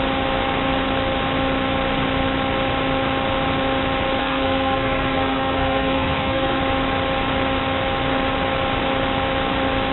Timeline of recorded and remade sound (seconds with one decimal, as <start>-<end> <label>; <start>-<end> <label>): 0.0-4.2 recorded; 4.2-6.6 remade; 6.6-9.9 recorded

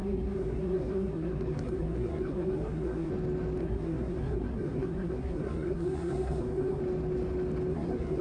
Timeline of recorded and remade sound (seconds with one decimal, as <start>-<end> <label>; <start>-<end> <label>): 0.0-3.1 remade; 3.1-3.6 recorded; 3.6-6.8 remade; 6.8-7.7 recorded; 7.7-8.2 remade

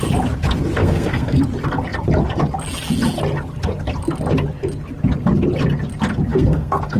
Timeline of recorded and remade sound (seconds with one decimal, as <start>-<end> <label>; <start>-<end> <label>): 0.0-0.8 recorded; 0.8-1.4 remade; 1.4-6.3 recorded; 6.3-7.0 remade

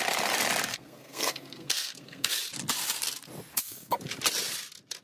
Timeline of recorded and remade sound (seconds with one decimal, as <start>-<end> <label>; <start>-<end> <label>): 0.0-0.7 recorded; 0.7-2.3 remade; 2.3-3.5 recorded; 3.5-4.0 remade; 4.0-5.0 recorded

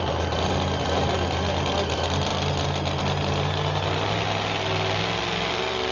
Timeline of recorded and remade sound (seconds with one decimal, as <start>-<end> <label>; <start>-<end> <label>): 0.0-5.9 recorded

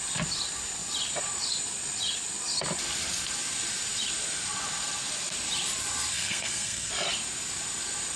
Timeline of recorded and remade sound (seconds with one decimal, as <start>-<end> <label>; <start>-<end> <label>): 0.0-6.1 recorded; 6.1-6.9 remade; 6.9-8.2 recorded

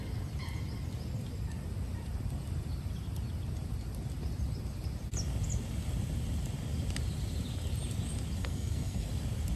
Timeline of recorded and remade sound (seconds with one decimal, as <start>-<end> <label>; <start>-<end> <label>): 0.0-8.4 recorded; 8.4-9.1 remade; 9.1-9.6 recorded

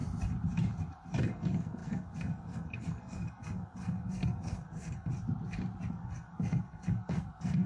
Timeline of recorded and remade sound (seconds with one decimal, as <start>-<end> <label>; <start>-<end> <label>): 0.0-1.2 recorded; 1.2-5.1 remade; 5.1-5.9 recorded; 5.9-7.7 remade